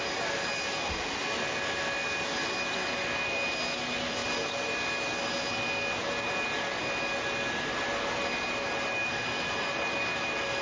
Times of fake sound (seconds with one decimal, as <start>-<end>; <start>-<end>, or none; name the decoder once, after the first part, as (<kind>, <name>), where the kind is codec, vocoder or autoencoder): none

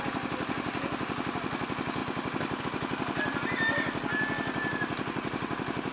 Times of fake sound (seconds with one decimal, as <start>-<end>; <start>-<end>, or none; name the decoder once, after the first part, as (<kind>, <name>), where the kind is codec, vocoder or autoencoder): none

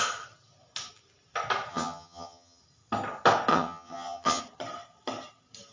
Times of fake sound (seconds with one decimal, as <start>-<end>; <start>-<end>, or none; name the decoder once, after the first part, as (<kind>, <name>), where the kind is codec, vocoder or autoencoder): 1.7-2.6 (vocoder, HiFi-GAN); 3.5-4.4

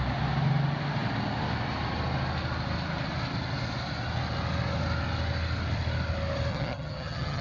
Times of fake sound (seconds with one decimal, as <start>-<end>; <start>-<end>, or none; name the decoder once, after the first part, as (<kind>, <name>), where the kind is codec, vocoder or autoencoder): 6.5-7.4 (vocoder, HiFi-GAN)